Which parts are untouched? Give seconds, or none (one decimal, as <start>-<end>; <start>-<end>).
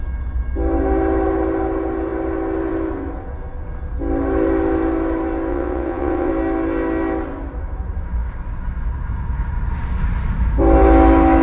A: 0.0-5.5; 6.3-11.4